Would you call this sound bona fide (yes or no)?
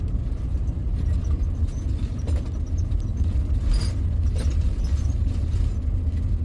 yes